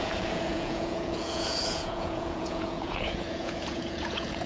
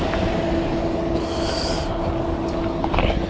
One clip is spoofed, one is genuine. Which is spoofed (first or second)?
first